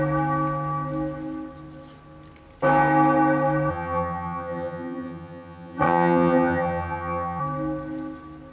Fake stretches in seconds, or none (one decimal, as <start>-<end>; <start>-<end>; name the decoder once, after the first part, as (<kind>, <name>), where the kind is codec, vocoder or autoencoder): 3.7-7.4 (vocoder, HiFi-GAN)